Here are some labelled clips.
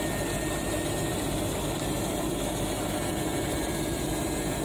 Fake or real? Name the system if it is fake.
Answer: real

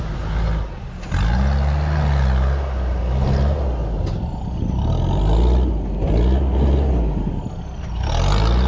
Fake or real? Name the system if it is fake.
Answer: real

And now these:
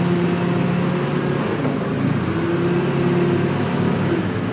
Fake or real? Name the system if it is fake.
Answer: real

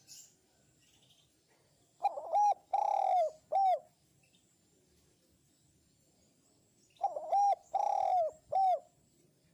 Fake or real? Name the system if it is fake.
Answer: real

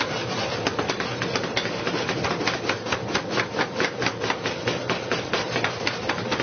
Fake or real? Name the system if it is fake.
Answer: real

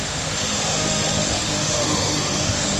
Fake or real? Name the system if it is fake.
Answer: fake, autoencoder, DAC-VAE